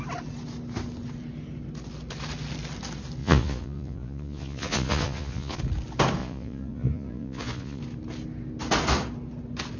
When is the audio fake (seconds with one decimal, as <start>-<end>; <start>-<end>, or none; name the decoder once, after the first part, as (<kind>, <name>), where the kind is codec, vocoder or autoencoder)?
3.2-5.6 (vocoder, Vocos); 6.2-7.8

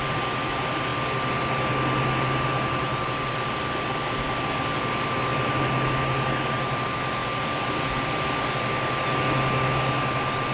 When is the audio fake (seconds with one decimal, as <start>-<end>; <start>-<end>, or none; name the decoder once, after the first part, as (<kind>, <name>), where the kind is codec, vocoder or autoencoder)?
none

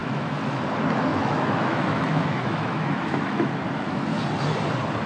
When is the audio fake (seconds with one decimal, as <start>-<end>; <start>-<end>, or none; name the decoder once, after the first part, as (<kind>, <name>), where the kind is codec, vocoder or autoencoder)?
0.0-0.6 (autoencoder, DAC-VAE); 1.1-4.2

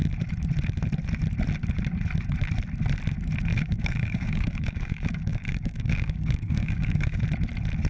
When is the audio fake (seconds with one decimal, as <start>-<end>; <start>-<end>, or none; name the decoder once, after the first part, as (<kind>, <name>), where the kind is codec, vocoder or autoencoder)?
3.5-7.2 (codec, DAC)

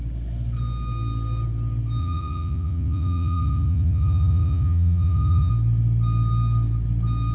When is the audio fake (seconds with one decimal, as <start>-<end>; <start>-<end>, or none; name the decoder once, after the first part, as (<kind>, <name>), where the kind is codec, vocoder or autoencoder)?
2.0-5.5 (vocoder, Vocos)

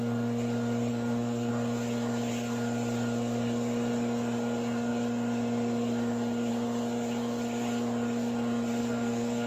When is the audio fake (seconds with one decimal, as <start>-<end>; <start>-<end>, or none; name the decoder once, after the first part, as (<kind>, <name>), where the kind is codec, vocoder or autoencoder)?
0.9-1.5 (codec, SNAC); 8.8-9.5

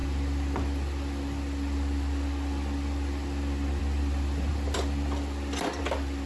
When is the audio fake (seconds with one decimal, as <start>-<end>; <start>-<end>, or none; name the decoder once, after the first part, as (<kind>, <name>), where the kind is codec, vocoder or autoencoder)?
4.5-5.8 (vocoder, BigVGAN v2)